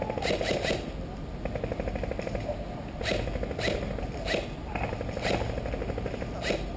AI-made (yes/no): no